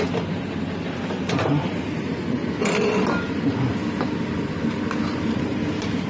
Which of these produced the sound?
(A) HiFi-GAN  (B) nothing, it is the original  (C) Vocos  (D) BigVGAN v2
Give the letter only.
B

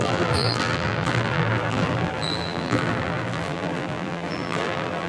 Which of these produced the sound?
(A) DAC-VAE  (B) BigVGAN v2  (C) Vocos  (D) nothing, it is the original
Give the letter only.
B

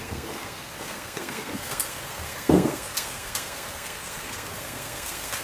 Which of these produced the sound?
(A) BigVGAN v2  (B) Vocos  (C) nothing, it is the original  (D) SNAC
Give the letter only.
D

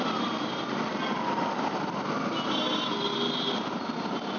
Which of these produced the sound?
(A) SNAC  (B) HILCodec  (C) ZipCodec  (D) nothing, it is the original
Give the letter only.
D